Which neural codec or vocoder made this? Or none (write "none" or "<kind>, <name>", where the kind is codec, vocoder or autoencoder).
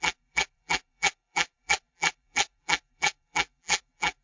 vocoder, BigVGAN v2